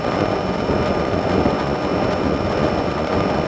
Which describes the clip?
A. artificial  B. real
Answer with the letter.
A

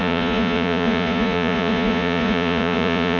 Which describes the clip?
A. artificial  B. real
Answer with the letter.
A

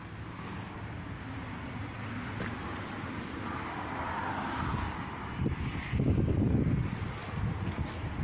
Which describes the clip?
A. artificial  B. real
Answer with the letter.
B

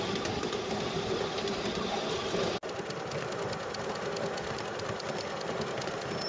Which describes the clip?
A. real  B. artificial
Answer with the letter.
A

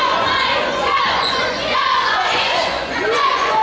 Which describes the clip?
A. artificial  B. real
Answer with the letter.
A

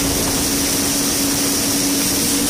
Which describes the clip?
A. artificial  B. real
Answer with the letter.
B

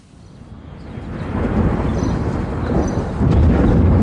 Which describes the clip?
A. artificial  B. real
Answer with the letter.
B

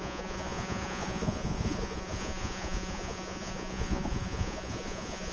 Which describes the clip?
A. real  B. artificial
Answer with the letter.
B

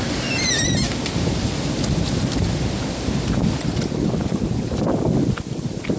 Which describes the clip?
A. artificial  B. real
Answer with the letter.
B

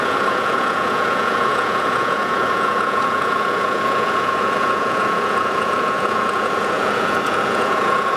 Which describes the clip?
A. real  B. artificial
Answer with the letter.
B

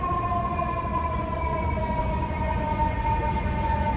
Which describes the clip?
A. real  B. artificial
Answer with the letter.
B